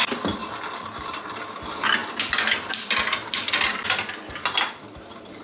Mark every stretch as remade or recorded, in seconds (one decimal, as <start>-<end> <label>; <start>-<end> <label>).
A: 0.0-5.4 recorded